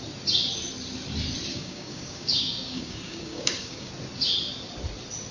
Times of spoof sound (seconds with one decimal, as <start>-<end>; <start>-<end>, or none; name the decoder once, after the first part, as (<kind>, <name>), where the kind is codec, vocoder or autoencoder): 1.5-3.9 (codec, DAC)

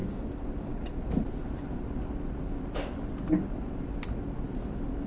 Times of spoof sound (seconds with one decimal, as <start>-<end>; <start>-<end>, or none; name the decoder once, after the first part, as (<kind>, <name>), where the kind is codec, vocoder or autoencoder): none

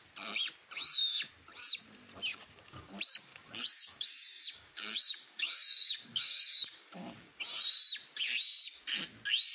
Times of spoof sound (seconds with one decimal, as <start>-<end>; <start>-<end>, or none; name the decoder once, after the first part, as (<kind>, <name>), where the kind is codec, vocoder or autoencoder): 2.3-2.9 (codec, DAC); 3.3-7.4

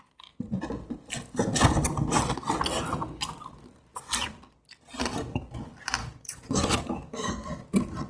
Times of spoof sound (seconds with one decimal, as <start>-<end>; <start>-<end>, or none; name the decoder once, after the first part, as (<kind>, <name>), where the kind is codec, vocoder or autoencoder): 6.0-7.3 (codec, DAC)

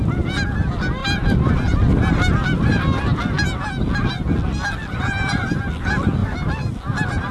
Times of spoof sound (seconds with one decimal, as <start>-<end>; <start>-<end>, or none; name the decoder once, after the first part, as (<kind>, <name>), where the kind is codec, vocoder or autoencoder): none

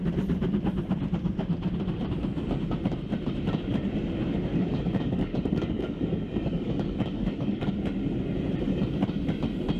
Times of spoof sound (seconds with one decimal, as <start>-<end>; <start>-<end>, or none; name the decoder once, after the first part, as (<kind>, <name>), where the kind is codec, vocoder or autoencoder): 4.5-7.7 (codec, DAC)